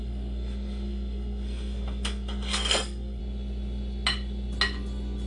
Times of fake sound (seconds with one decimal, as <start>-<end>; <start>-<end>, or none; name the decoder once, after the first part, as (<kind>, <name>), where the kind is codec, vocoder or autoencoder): 0.0-3.2 (codec, SNAC)